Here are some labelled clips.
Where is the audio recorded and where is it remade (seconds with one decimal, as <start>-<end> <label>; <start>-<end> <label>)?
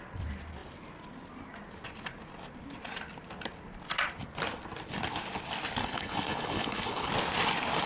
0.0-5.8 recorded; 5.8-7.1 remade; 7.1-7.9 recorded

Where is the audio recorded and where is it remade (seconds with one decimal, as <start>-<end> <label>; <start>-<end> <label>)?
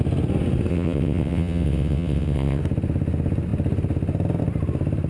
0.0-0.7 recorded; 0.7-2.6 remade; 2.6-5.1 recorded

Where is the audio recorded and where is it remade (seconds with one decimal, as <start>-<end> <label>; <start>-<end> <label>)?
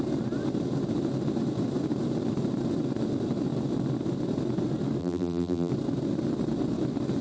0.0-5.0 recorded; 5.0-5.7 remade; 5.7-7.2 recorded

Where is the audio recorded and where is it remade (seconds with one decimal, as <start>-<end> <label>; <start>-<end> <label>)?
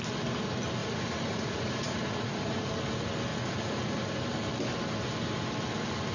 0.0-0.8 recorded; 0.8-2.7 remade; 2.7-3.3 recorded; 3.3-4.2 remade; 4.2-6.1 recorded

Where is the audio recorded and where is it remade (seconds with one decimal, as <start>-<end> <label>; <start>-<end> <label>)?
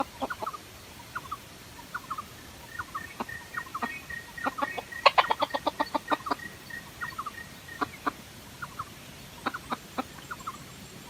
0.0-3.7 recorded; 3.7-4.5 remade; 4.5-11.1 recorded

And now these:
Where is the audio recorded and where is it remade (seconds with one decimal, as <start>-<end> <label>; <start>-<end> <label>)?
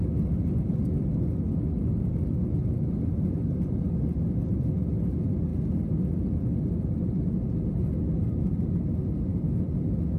0.0-10.2 recorded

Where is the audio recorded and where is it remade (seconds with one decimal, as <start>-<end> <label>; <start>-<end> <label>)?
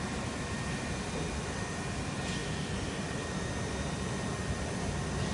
0.0-5.3 recorded